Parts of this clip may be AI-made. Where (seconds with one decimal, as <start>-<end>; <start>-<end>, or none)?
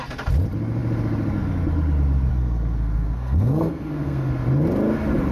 2.3-4.3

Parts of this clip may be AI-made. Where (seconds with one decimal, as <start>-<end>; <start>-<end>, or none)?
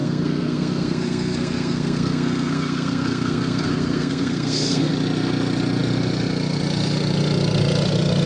0.0-4.9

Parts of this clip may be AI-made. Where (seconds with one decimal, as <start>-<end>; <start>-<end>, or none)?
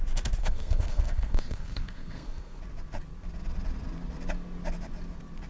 0.4-2.6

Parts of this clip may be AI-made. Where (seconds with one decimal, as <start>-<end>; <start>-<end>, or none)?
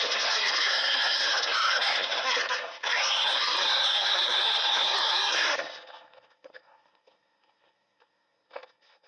0.0-9.1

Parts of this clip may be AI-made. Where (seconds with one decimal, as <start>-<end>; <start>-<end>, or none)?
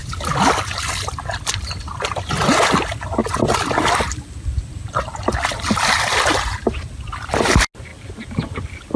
none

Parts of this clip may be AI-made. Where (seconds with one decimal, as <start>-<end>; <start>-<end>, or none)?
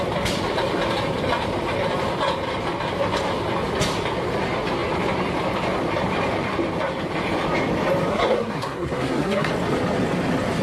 8.1-9.5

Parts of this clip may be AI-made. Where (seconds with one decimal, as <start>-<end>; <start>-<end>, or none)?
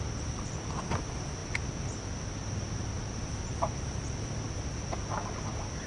none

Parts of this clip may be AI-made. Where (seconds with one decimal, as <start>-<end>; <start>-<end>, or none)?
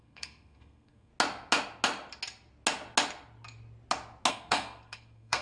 0.0-1.1; 4.3-5.4